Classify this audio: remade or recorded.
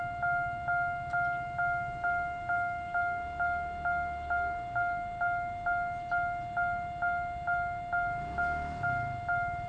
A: recorded